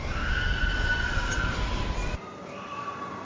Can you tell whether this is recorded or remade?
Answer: recorded